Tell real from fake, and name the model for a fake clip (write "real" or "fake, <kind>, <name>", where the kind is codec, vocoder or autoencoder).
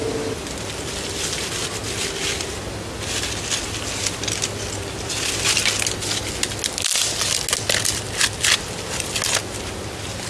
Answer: real